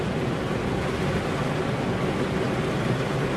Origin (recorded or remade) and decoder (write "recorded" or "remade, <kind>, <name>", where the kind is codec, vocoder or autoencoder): recorded